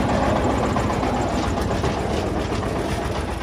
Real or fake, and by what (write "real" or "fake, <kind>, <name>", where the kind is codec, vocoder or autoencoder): real